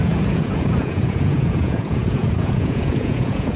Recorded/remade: remade